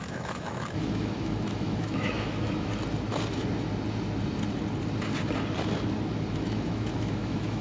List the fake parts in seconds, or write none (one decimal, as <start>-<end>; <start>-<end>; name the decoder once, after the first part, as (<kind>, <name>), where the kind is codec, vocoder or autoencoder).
0.0-2.7 (autoencoder, DAC-VAE); 6.3-7.6